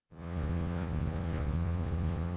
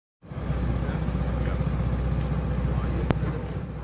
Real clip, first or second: second